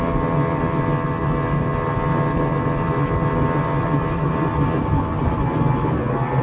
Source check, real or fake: real